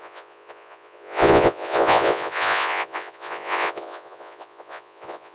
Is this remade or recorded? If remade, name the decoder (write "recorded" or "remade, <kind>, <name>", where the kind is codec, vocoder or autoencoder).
remade, vocoder, Vocos